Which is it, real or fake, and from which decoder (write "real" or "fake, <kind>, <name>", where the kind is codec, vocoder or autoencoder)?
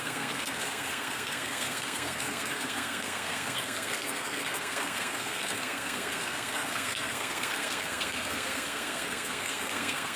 fake, codec, SNAC